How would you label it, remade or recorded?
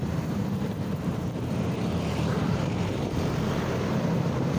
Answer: remade